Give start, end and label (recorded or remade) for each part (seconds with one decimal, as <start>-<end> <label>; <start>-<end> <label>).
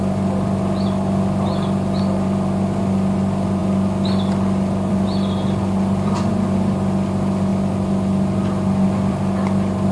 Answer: 0.0-3.6 remade; 3.6-4.9 recorded; 4.9-7.5 remade; 7.5-9.1 recorded; 9.1-9.9 remade